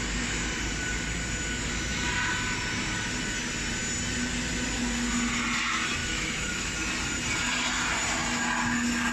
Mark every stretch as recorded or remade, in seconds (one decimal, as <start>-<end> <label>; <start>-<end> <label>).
0.0-6.0 recorded; 6.0-6.7 remade; 6.7-9.1 recorded